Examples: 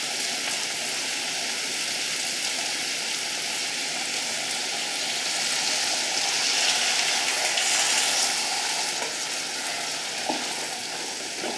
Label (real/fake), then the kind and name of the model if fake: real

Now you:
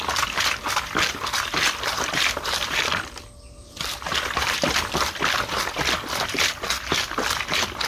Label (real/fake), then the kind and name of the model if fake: fake, vocoder, BigVGAN v2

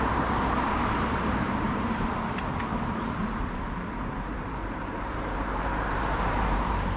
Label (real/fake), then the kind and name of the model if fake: fake, vocoder, BigVGAN v2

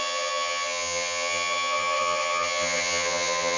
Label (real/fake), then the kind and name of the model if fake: fake, vocoder, HiFi-GAN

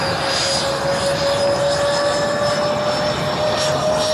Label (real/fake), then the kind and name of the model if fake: real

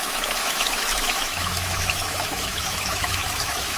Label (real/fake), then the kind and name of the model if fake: fake, autoencoder, DAC-VAE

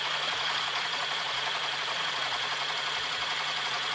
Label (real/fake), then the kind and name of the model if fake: fake, vocoder, Vocos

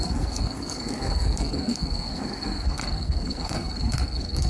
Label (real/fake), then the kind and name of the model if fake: fake, codec, SNAC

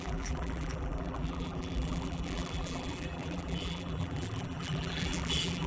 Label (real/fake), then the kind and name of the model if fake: fake, vocoder, BigVGAN v2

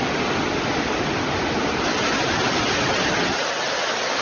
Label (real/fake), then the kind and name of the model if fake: real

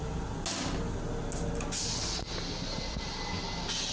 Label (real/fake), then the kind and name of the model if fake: real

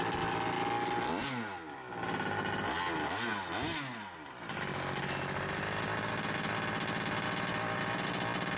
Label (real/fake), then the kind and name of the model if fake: real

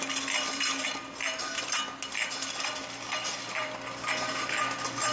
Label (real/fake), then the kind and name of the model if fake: real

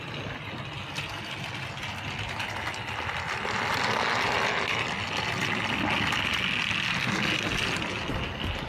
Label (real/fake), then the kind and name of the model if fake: real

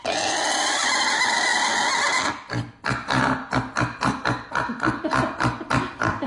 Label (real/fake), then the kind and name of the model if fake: real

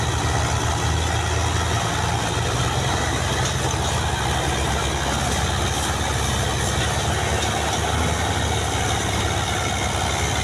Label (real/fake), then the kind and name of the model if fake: real